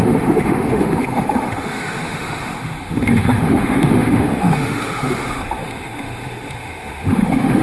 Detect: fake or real fake